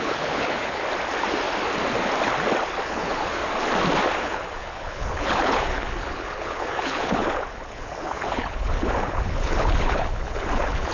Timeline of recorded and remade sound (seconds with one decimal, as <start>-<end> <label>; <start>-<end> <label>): 0.0-0.8 remade; 0.8-2.8 recorded; 2.8-3.4 remade; 3.4-4.2 recorded; 4.2-10.9 remade